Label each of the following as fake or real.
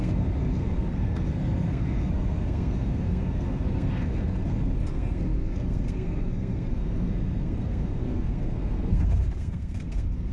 fake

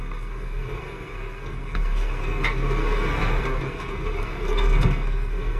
fake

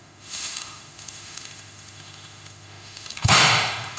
fake